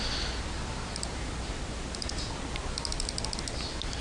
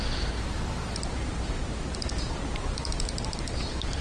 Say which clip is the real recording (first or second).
first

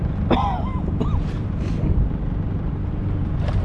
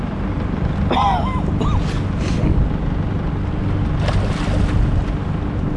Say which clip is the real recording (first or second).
second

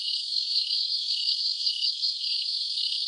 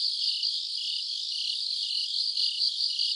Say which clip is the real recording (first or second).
second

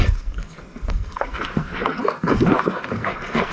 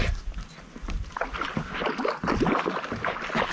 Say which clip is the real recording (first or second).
second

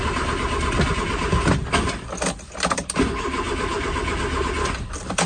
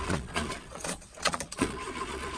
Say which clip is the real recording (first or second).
first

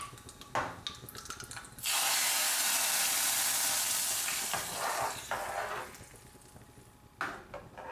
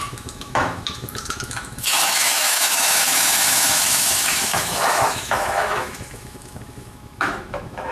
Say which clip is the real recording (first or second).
first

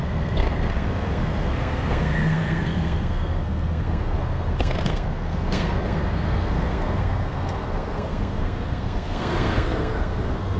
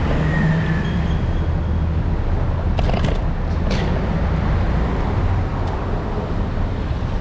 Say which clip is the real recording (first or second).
second